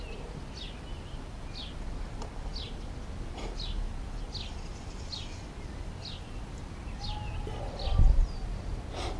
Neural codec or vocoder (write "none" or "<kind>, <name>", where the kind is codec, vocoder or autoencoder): none